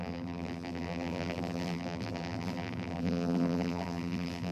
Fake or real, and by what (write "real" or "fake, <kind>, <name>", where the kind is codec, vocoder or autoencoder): fake, vocoder, BigVGAN v2